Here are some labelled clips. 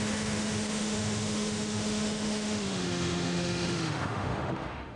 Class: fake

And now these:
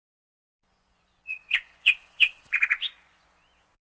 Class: fake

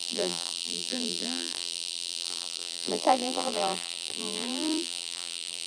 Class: fake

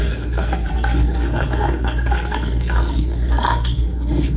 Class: fake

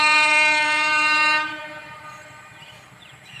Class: fake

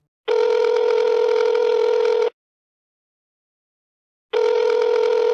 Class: real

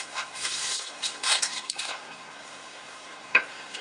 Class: fake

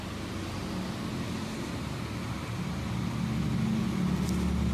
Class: real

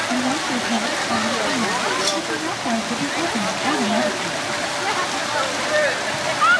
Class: real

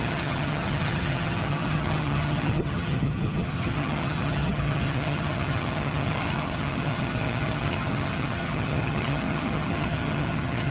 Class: fake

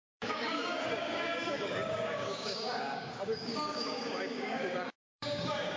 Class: fake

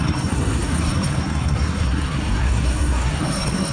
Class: fake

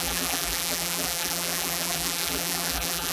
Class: fake